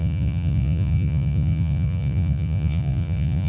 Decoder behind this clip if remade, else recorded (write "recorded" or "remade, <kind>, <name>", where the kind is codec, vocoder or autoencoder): remade, vocoder, Vocos